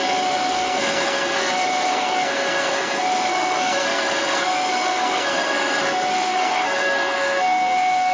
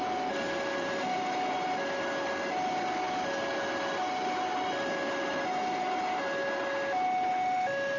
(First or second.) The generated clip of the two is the first